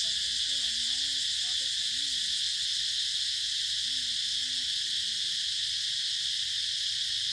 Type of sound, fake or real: real